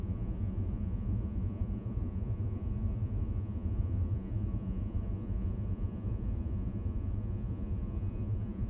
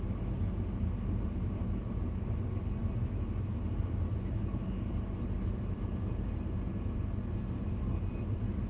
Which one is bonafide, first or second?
second